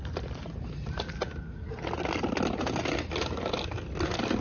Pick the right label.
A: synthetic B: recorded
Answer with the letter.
B